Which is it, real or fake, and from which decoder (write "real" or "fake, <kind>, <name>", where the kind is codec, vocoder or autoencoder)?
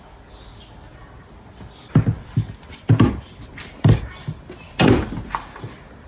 real